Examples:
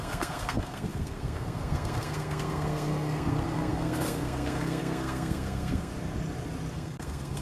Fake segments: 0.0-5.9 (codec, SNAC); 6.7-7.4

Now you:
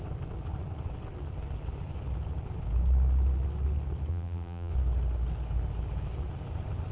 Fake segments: 4.1-4.7 (vocoder, BigVGAN v2)

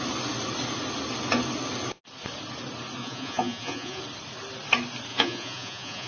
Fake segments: 3.0-4.0 (vocoder, Vocos); 5.1-6.1

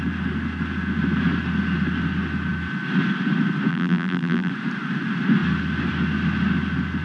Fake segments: 3.7-4.5 (vocoder, BigVGAN v2)

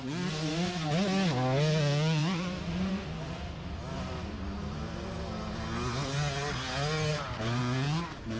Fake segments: 2.2-2.9 (vocoder, BigVGAN v2); 7.1-7.6